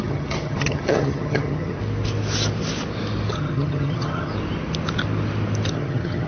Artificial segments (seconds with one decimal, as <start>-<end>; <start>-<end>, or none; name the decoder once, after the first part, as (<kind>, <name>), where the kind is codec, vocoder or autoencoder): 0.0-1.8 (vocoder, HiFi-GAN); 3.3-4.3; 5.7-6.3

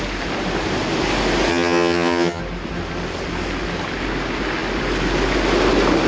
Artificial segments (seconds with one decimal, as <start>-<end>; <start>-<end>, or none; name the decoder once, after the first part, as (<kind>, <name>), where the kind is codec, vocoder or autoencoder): 1.5-2.4 (vocoder, HiFi-GAN)

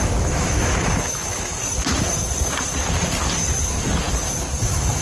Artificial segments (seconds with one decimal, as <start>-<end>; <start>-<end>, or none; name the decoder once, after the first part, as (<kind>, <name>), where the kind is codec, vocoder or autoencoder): 0.0-1.6 (autoencoder, DAC-VAE); 4.6-5.0

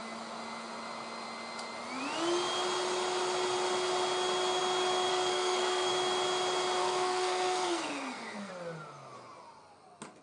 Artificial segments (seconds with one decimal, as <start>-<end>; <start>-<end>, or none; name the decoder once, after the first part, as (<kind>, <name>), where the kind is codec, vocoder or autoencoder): 5.1-5.9 (codec, SNAC); 6.8-8.5

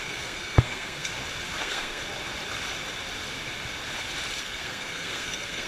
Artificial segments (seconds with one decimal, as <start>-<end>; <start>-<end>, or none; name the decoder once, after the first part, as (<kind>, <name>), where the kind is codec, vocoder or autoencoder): 0.0-1.1 (codec, SNAC); 1.6-2.0; 4.4-5.7

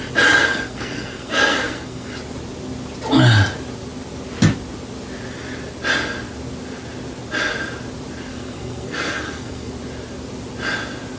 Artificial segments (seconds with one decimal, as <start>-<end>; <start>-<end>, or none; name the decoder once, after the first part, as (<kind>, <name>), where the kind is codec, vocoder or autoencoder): 0.4-2.1 (codec, SNAC); 8.3-9.7

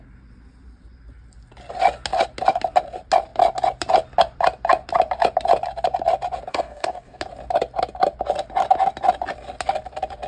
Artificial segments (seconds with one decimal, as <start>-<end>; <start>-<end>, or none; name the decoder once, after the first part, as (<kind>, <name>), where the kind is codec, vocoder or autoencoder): 6.5-7.2 (codec, DAC)

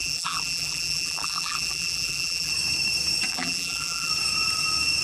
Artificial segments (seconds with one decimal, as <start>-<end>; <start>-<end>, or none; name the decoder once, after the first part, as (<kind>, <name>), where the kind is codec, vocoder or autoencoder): 0.0-2.5 (vocoder, BigVGAN v2); 3.3-4.1